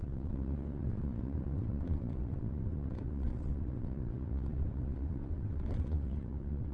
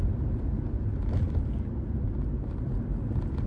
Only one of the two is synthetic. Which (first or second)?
first